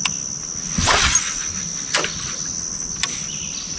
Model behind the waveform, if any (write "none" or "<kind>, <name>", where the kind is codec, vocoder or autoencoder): none